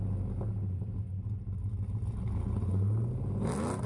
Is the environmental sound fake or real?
real